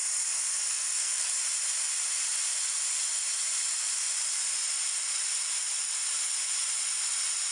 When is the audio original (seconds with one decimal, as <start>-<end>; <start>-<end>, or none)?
0.0-0.7; 1.3-7.5